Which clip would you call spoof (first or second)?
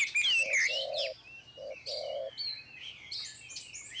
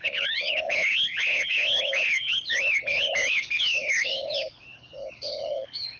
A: second